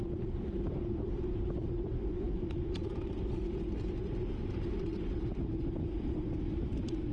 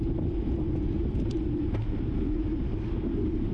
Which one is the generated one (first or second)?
first